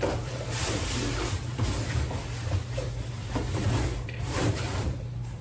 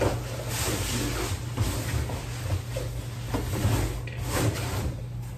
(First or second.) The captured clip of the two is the second